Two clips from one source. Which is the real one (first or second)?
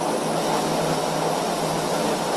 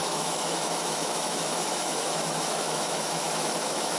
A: first